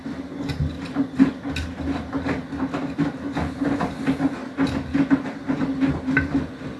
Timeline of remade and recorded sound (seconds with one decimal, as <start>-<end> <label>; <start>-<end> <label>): 0.0-6.8 recorded